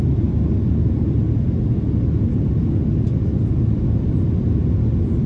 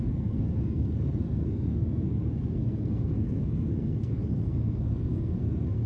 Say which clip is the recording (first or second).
first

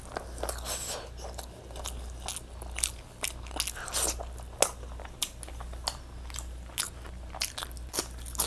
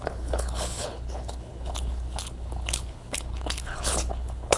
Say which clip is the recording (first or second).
first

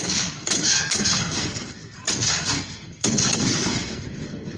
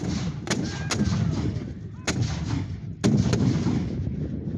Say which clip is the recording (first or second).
second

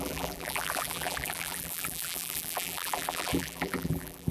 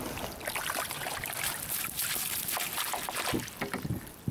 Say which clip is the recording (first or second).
second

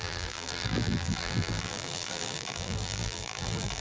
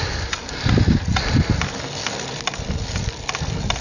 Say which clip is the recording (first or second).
second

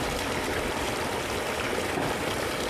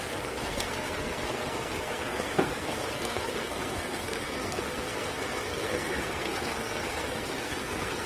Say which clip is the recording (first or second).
first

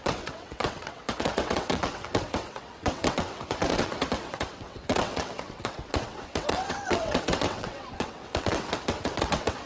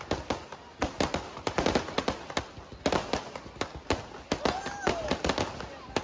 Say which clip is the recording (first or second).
second